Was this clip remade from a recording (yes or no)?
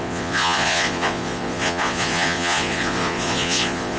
yes